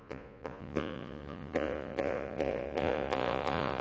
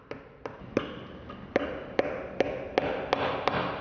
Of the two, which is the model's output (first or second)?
first